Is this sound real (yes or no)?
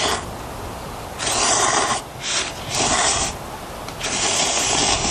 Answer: yes